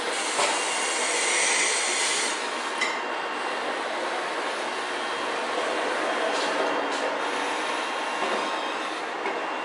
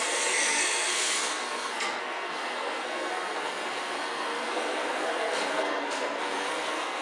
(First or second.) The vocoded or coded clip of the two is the second